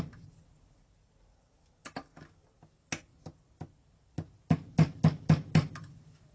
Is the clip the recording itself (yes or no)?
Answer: yes